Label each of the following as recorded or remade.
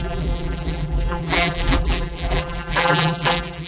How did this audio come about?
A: remade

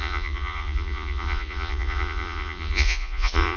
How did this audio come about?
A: remade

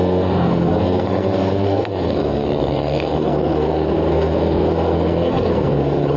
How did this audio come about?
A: remade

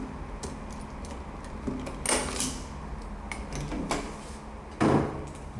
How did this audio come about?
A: recorded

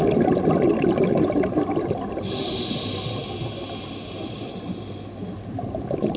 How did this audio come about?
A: recorded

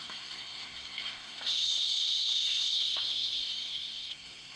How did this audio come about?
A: remade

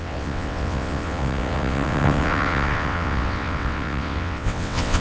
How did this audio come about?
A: remade